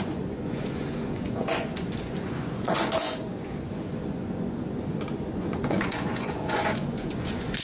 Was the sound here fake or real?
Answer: fake